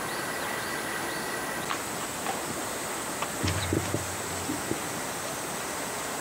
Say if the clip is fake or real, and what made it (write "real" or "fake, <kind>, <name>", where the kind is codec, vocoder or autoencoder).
real